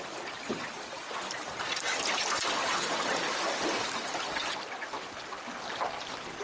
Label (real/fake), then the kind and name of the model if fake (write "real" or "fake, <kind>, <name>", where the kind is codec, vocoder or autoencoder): fake, vocoder, BigVGAN v2